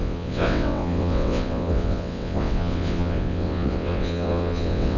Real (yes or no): no